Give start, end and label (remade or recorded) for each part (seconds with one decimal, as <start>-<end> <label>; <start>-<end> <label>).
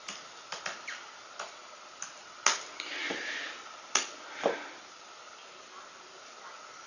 0.0-6.9 recorded